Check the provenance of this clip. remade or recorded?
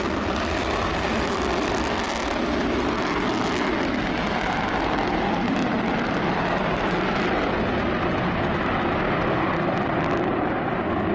recorded